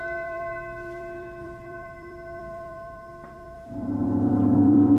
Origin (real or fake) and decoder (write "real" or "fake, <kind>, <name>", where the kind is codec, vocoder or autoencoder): fake, vocoder, BigVGAN v2